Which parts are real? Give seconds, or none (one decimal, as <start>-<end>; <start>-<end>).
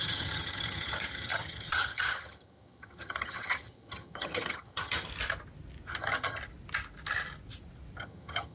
5.1-5.9; 6.4-8.0